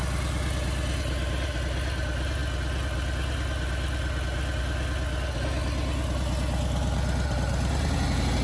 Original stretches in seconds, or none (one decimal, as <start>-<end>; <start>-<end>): 0.0-8.4